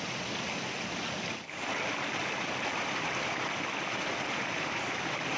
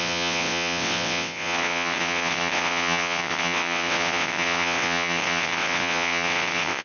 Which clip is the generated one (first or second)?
second